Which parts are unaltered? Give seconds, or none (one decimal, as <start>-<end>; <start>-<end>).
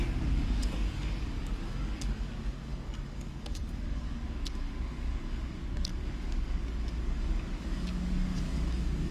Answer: none